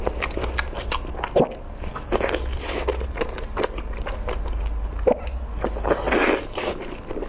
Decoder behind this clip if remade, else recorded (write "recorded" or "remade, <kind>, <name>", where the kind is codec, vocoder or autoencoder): recorded